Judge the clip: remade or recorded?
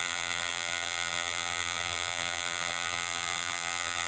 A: remade